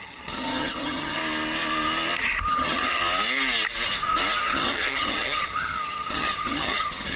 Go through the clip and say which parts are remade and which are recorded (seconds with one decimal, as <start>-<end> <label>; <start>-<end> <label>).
0.0-1.2 remade; 1.2-2.5 recorded; 2.5-3.0 remade; 3.0-4.4 recorded; 4.4-7.2 remade